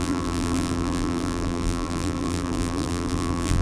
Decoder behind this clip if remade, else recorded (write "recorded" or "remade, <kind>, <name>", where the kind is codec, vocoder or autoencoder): remade, vocoder, BigVGAN v2